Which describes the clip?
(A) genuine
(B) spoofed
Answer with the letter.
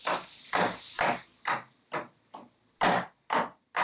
A